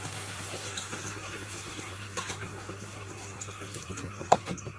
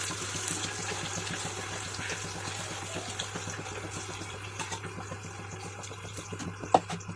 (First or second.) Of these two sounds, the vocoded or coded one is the first